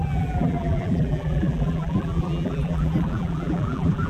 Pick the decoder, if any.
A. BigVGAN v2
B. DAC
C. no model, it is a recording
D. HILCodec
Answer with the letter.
A